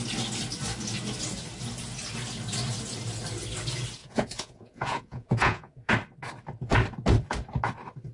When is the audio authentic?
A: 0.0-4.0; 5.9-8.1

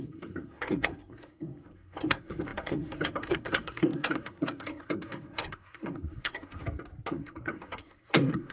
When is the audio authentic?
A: 6.6-7.1

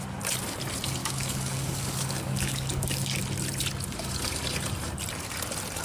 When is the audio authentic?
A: 0.0-1.0; 3.2-5.8